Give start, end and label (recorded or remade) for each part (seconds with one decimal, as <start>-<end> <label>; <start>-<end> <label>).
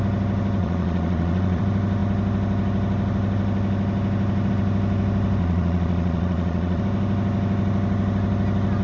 0.0-0.6 recorded; 0.6-1.6 remade; 1.6-5.4 recorded; 5.4-6.8 remade; 6.8-8.8 recorded